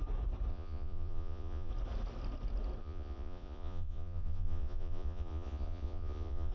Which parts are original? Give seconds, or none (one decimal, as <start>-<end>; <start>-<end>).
0.0-0.5; 1.7-2.8